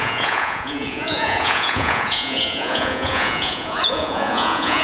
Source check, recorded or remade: remade